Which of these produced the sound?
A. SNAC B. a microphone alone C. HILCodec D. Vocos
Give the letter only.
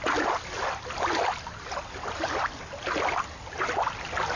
B